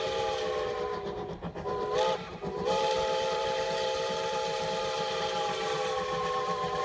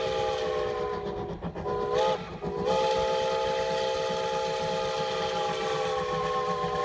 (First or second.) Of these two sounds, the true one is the second